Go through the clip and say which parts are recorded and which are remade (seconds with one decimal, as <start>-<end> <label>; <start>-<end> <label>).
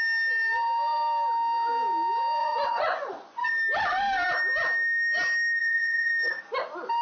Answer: 0.0-2.4 recorded; 2.4-3.5 remade; 3.5-5.6 recorded; 5.6-6.1 remade; 6.1-7.0 recorded